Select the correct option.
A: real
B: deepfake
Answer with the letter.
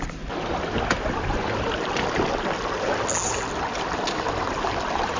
A